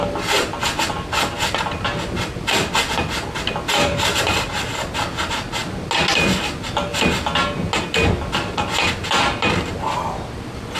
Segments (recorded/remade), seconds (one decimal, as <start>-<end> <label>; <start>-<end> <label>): 0.0-3.8 recorded; 3.8-4.5 remade; 4.5-10.8 recorded

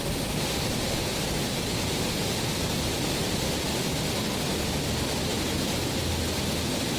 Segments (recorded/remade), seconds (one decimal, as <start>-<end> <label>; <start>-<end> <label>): 0.0-3.2 recorded; 3.2-3.7 remade; 3.7-7.0 recorded

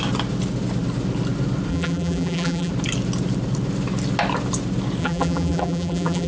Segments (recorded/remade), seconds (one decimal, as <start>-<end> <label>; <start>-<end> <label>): 0.0-1.7 recorded; 1.7-2.7 remade; 2.7-5.0 recorded; 5.0-6.3 remade